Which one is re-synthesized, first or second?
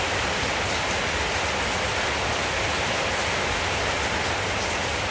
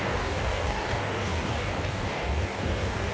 second